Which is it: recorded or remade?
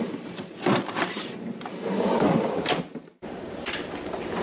remade